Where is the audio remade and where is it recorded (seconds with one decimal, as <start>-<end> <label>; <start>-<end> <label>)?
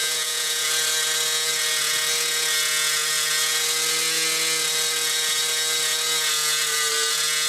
0.0-0.7 remade; 0.7-7.5 recorded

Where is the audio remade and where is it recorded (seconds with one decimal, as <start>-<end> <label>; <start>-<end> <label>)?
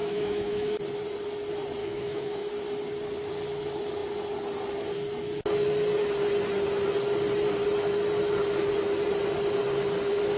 0.0-0.8 remade; 0.8-1.8 recorded; 1.8-2.5 remade; 2.5-10.4 recorded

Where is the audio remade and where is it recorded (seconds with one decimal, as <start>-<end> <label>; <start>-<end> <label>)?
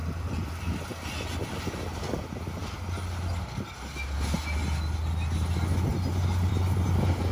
0.0-0.6 remade; 0.6-7.3 recorded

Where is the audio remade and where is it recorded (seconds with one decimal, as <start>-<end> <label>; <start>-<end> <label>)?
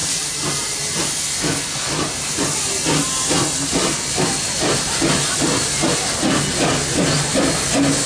0.0-1.0 remade; 1.0-8.1 recorded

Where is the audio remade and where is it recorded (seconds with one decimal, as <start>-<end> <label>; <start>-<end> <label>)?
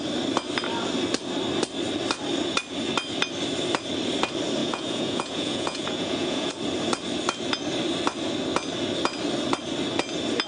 0.0-4.6 recorded; 4.6-6.5 remade; 6.5-10.5 recorded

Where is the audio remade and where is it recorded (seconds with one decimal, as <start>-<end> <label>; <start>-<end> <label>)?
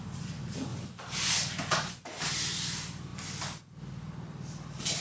0.0-5.0 recorded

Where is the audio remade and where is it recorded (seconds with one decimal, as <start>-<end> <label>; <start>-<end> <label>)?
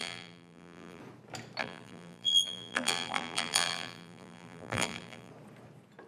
0.0-1.0 remade; 1.0-1.6 recorded; 1.6-5.3 remade; 5.3-6.1 recorded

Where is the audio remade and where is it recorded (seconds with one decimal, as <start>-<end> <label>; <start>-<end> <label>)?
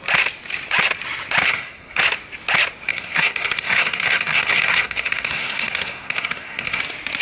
0.0-1.4 recorded; 1.4-2.0 remade; 2.0-2.9 recorded; 2.9-6.8 remade; 6.8-7.2 recorded